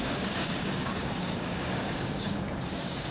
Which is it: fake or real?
fake